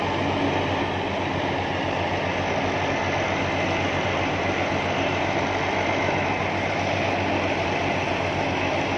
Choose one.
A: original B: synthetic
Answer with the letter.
A